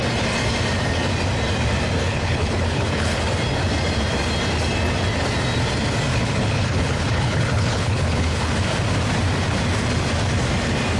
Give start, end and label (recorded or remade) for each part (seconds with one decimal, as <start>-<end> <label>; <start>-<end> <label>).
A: 0.0-2.1 recorded; 2.1-3.2 remade; 3.2-6.1 recorded; 6.1-8.5 remade; 8.5-11.0 recorded